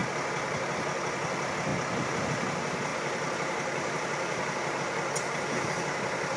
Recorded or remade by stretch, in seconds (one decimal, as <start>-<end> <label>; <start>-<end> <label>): 0.0-2.9 recorded; 2.9-4.8 remade; 4.8-6.4 recorded